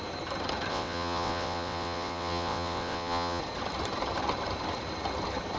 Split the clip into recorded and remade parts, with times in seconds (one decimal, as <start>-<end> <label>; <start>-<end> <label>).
0.0-0.7 recorded; 0.7-3.4 remade; 3.4-5.6 recorded